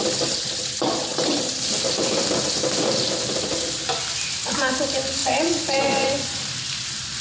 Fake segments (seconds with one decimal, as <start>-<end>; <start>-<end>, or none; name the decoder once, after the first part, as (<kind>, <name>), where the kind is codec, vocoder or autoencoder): 5.2-6.4 (vocoder, Vocos)